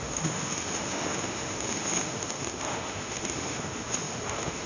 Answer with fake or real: fake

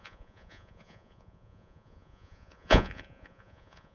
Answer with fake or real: fake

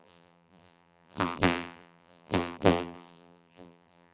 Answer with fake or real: fake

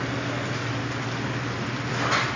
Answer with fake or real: real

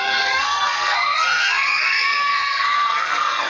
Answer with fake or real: fake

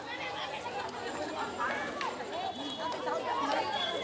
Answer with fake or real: real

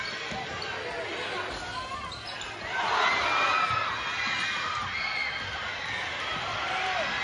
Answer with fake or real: real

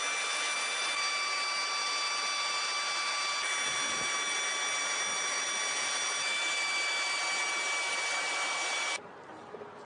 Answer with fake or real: real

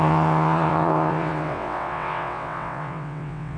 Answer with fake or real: fake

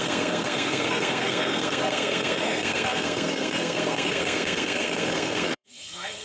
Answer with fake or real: fake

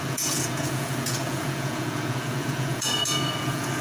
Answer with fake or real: fake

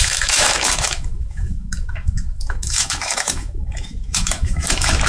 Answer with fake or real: fake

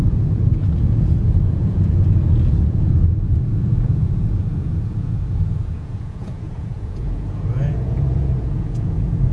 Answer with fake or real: fake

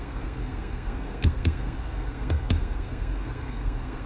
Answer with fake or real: fake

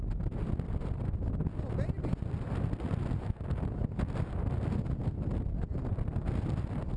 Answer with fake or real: real